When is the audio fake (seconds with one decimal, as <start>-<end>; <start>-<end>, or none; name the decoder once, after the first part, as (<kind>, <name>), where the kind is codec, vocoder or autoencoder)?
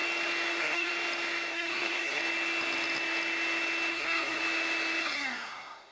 0.5-0.9 (codec, SNAC); 1.5-2.2; 3.9-4.4; 5.0-5.9